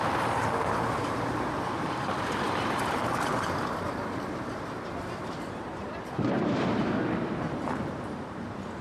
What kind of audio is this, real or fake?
fake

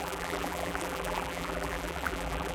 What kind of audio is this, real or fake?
fake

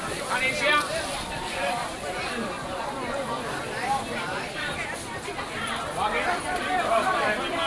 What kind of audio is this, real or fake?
fake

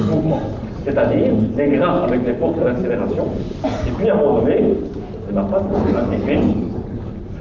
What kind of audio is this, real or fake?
real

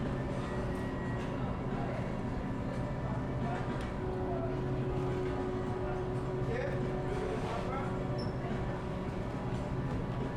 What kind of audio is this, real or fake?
real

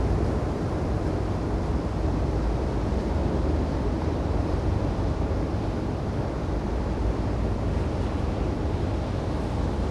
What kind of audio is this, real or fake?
fake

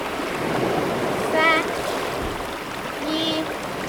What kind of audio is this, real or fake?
real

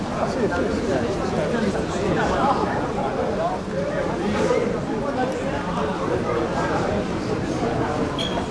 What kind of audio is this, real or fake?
real